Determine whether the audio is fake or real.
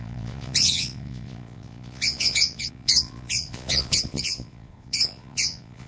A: fake